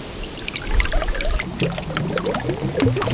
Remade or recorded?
recorded